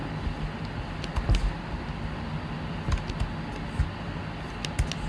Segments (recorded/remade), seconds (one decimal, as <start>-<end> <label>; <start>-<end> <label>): 0.0-5.1 recorded